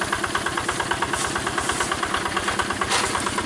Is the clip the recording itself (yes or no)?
yes